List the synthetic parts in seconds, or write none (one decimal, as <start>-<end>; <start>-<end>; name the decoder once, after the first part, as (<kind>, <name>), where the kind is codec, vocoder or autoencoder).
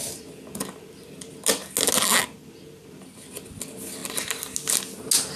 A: none